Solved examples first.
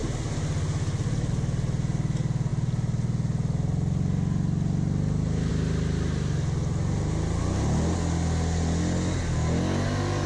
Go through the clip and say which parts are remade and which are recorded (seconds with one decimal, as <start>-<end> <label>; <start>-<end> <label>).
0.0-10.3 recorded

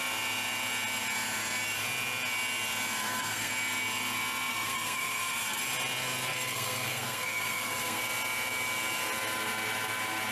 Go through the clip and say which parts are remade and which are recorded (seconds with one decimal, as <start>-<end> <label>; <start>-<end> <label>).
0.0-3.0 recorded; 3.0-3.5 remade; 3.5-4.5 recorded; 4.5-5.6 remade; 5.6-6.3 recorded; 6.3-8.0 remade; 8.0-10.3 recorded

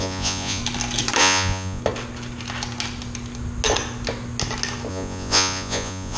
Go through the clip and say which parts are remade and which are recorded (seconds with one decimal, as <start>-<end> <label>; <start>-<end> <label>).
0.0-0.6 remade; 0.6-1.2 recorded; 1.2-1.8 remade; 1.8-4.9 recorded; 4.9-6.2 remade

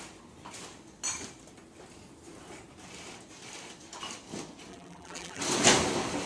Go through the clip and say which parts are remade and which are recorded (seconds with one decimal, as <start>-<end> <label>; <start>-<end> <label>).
0.0-4.7 recorded; 4.7-5.4 remade; 5.4-6.3 recorded